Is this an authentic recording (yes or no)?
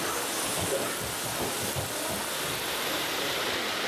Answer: yes